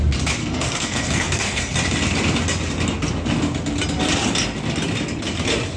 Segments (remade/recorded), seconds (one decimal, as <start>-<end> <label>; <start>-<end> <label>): 0.0-0.4 recorded; 0.4-1.6 remade; 1.6-5.8 recorded